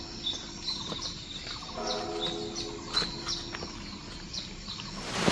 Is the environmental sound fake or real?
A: real